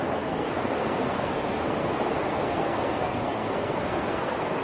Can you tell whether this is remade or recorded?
remade